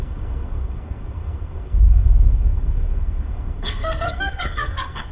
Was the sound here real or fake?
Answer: fake